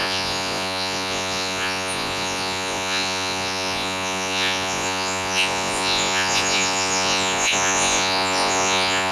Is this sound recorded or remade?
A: remade